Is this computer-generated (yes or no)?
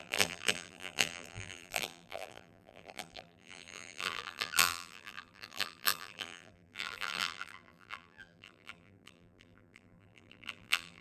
yes